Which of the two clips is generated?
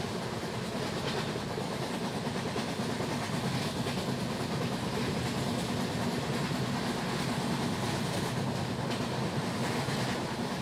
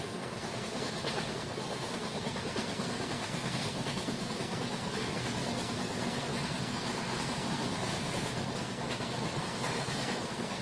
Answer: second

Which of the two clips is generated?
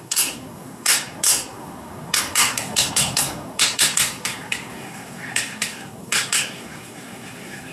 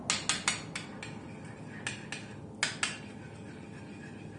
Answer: first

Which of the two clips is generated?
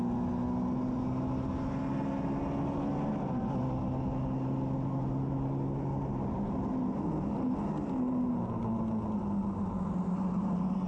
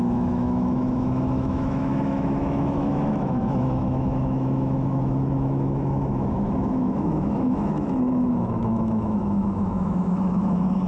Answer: second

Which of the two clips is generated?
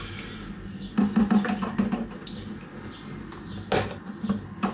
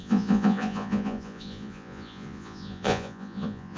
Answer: second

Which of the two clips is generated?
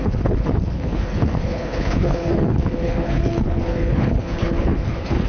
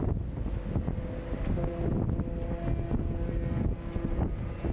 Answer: first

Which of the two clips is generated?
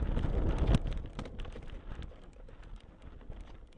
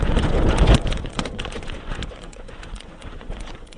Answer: second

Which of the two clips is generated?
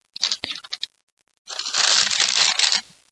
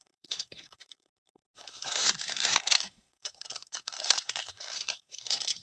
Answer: second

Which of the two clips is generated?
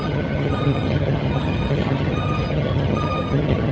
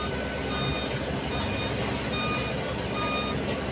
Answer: first